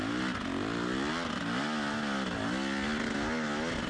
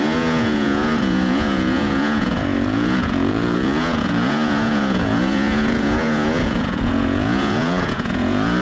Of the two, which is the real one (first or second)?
first